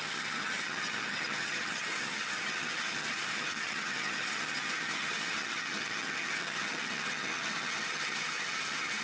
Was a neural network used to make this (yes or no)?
yes